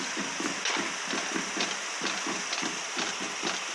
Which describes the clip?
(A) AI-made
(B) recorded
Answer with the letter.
B